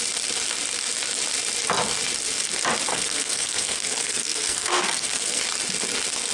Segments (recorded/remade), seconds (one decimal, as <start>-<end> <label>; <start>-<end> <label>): 0.0-2.9 recorded; 2.9-5.4 remade; 5.4-6.3 recorded